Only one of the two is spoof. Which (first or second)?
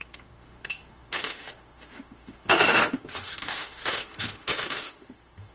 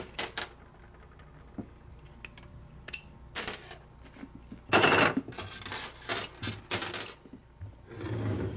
first